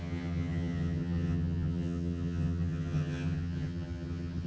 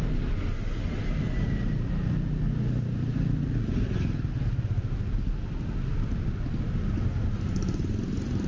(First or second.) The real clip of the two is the second